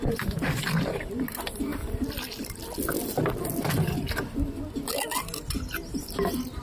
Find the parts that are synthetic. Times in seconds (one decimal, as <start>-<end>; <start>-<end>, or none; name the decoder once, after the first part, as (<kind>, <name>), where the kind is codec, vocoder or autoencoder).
none